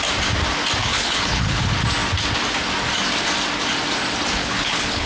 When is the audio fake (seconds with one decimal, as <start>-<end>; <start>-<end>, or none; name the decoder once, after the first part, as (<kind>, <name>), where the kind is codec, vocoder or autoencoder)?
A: 0.8-1.6 (codec, HILCodec); 4.4-5.1